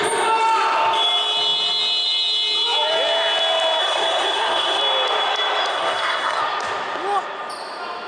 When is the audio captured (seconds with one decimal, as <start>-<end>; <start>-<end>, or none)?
0.0-3.8; 4.8-5.7; 6.4-8.1